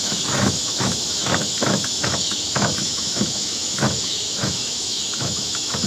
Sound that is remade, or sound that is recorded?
remade